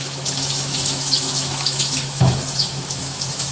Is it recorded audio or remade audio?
remade